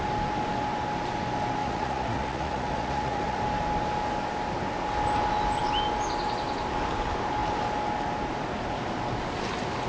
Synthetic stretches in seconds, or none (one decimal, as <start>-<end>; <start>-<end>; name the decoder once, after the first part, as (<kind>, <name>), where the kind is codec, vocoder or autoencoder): 1.6-3.4 (vocoder, Vocos)

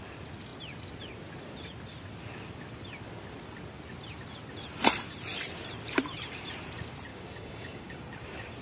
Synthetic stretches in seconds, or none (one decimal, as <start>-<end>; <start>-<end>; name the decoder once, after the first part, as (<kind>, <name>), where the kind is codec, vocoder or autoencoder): 7.1-8.0 (codec, DAC)

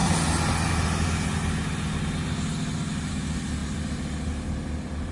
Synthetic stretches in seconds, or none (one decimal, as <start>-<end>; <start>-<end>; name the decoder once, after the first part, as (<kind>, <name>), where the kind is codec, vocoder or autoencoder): none

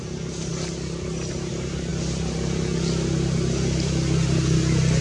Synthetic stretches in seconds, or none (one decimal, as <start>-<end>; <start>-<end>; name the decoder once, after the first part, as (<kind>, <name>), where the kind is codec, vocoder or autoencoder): none

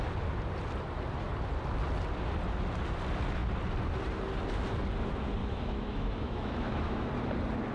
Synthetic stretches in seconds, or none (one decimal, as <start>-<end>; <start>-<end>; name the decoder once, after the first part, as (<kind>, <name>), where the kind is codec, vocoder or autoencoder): 5.4-7.1 (autoencoder, DAC-VAE)

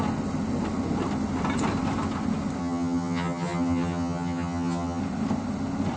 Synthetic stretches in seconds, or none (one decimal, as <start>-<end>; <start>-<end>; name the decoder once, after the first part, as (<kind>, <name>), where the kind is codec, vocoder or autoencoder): 2.6-5.0 (vocoder, HiFi-GAN)

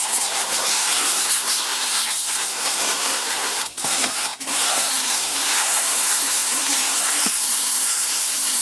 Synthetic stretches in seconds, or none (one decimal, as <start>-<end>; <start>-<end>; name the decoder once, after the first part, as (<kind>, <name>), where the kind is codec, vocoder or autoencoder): 0.0-8.6 (codec, SNAC)

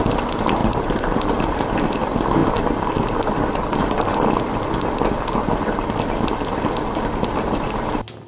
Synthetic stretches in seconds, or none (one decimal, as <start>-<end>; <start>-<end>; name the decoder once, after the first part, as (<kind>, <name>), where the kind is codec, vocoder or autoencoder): 0.6-1.6 (vocoder, BigVGAN v2)